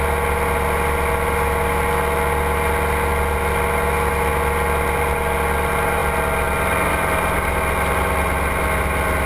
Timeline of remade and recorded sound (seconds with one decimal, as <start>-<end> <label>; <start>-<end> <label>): 0.0-9.3 recorded